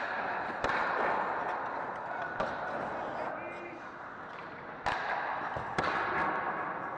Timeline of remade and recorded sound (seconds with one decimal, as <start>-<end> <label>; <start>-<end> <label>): 0.0-7.0 recorded